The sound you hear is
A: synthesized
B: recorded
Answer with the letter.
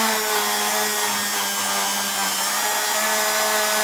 B